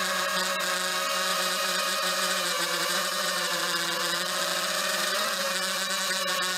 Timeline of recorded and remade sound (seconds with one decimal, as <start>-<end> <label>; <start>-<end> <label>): 0.0-1.3 recorded; 1.3-3.6 remade; 3.6-4.5 recorded; 4.5-5.2 remade; 5.2-6.6 recorded